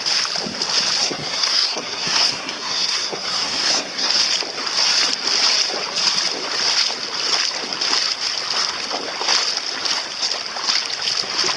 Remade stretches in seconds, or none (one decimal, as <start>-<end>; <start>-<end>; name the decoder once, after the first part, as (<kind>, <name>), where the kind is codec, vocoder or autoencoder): 1.0-4.1 (codec, SNAC)